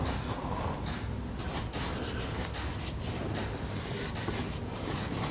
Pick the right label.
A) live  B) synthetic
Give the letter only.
A